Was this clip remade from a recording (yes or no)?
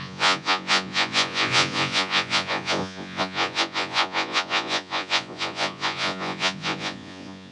yes